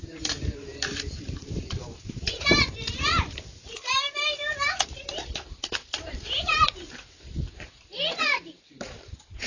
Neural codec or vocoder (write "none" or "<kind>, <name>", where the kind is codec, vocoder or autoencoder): vocoder, BigVGAN v2